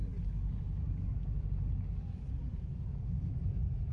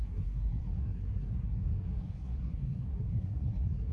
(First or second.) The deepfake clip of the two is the second